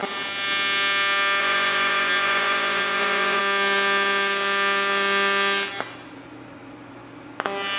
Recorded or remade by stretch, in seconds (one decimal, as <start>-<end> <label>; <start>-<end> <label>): 0.0-1.4 recorded; 1.4-3.4 remade; 3.4-7.8 recorded